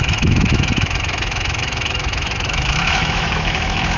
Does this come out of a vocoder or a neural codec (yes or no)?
yes